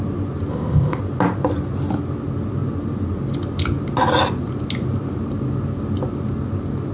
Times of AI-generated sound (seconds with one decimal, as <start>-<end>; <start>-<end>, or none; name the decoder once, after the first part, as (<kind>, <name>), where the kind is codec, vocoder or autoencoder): 0.5-1.0 (codec, ZipCodec)